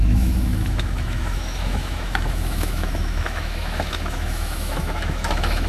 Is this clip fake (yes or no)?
yes